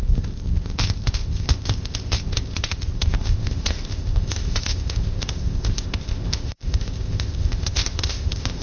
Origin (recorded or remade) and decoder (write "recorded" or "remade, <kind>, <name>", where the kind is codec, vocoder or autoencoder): remade, codec, ZipCodec